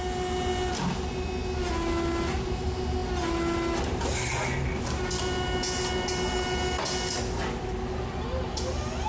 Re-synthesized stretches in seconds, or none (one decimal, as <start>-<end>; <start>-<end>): none

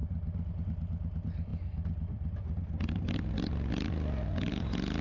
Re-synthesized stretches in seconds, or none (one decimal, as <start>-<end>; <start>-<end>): none

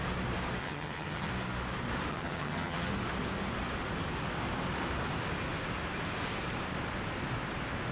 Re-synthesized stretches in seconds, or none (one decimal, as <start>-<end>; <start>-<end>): 0.6-1.3; 2.1-2.9

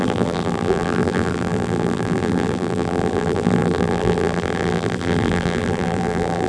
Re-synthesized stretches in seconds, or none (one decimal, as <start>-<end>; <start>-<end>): 0.0-6.5